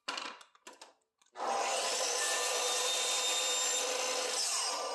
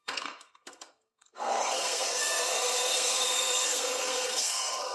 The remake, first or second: second